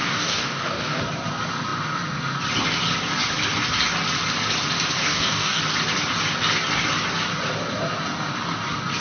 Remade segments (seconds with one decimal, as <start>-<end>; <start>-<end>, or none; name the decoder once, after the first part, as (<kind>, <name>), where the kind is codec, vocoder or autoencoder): 0.0-1.0 (codec, DAC); 5.0-5.6